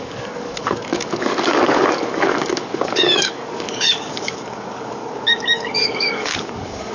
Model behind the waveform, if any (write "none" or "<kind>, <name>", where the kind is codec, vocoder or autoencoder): codec, DAC